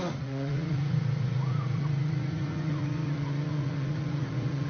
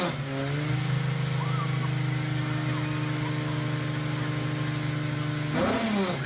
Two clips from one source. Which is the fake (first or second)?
first